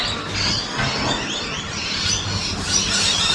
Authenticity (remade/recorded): recorded